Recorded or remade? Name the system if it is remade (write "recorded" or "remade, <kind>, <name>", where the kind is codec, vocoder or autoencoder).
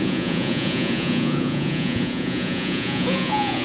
remade, vocoder, Vocos